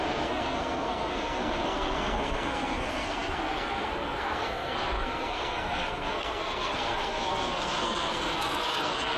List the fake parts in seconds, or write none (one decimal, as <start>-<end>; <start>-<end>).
0.0-9.2